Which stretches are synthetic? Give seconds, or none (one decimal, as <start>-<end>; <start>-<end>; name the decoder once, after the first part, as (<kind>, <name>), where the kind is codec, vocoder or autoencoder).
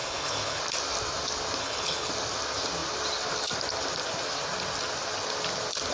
0.0-0.6 (codec, HILCodec); 1.6-2.1